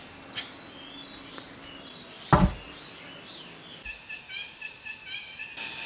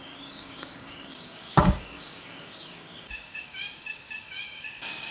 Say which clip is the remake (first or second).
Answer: second